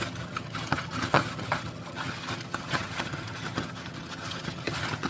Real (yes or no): no